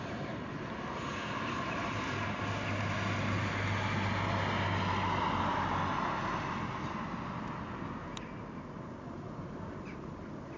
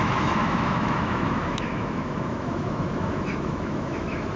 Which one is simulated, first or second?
second